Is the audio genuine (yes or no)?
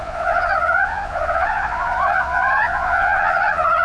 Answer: no